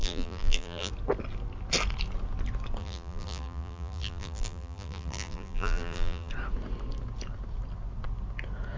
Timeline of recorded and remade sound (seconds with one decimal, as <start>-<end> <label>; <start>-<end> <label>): 0.0-0.9 remade; 0.9-2.8 recorded; 2.8-6.3 remade; 6.3-8.8 recorded